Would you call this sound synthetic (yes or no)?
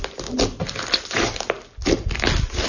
no